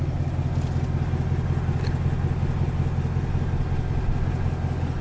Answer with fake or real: real